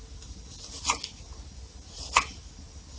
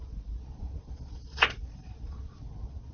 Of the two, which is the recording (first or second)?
first